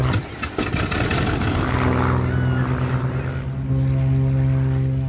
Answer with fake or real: real